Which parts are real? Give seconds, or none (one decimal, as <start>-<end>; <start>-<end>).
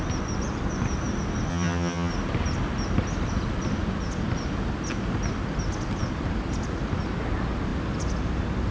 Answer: 0.0-1.5; 2.1-8.7